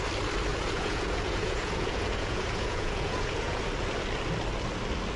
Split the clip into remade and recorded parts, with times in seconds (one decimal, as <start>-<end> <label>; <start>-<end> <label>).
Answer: 0.0-0.5 recorded; 0.5-3.6 remade; 3.6-5.2 recorded